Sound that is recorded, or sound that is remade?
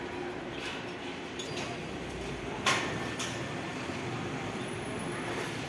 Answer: remade